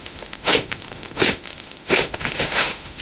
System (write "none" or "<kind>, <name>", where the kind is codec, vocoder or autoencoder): autoencoder, DAC-VAE